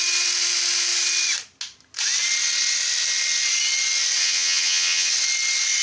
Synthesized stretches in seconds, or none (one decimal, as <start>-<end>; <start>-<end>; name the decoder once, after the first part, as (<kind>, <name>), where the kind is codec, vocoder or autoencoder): 4.2-5.1 (vocoder, HiFi-GAN)